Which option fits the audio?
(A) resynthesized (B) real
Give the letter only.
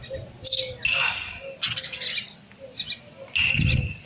B